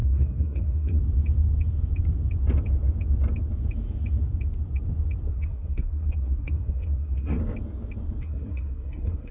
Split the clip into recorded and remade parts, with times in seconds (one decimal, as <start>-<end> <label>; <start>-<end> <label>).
0.0-1.0 remade; 1.0-5.3 recorded; 5.3-7.4 remade; 7.4-8.2 recorded; 8.2-9.3 remade